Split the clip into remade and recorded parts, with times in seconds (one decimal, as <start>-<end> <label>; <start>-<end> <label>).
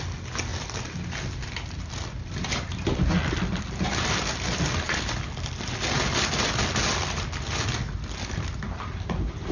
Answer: 0.0-9.5 recorded